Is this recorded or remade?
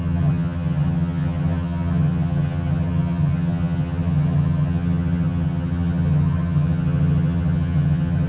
remade